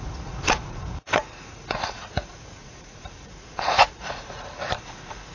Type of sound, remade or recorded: remade